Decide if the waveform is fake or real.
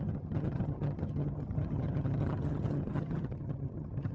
fake